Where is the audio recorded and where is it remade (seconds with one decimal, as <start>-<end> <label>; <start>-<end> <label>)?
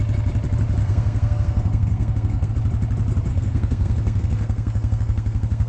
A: 0.0-0.8 recorded; 0.8-2.5 remade; 2.5-3.3 recorded; 3.3-5.7 remade